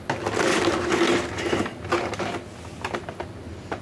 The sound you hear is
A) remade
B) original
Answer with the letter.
B